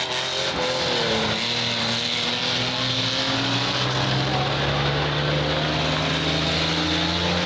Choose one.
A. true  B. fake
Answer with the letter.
A